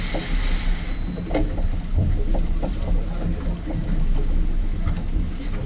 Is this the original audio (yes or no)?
yes